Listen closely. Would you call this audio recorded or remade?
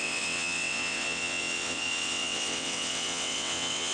remade